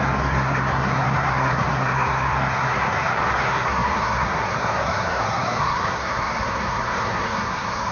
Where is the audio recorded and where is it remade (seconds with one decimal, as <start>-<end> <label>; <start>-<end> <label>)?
0.0-7.9 remade